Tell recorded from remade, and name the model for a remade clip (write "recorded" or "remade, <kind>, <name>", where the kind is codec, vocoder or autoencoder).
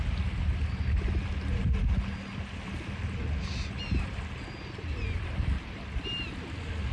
recorded